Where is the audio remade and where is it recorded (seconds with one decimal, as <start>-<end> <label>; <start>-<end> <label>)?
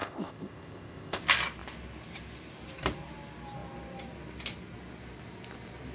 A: 0.0-1.2 remade; 1.2-5.9 recorded